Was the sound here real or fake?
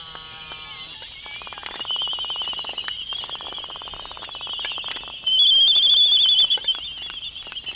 real